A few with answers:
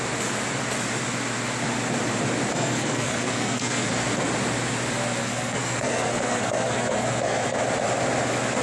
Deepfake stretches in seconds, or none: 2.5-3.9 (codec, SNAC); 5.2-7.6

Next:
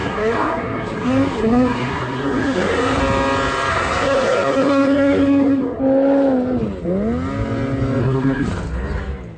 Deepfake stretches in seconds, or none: 0.0-3.0 (codec, SNAC); 3.7-5.8; 8.0-8.5

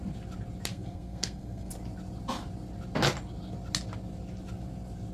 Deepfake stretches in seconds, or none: 0.7-1.7 (codec, SNAC)